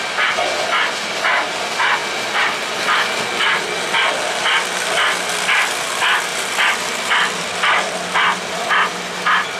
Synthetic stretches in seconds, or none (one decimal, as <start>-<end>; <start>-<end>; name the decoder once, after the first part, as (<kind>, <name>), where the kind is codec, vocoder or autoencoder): 6.3-7.9 (vocoder, BigVGAN v2)